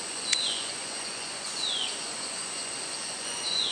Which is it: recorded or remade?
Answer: remade